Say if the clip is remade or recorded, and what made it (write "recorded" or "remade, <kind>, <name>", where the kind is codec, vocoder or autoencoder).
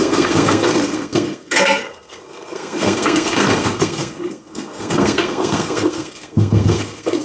remade, codec, SNAC